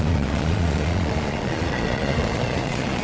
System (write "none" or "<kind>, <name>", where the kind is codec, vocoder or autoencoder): vocoder, Vocos